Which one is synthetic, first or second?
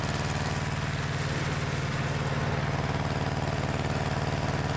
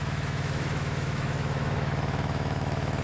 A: second